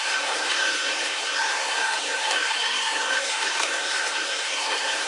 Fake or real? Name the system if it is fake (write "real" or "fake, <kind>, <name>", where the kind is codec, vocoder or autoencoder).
fake, codec, SNAC